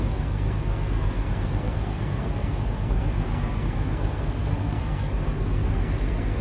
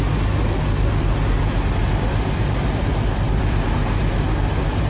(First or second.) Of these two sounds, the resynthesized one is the first